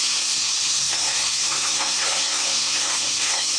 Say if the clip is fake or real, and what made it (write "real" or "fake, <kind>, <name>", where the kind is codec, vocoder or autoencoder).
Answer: fake, codec, SNAC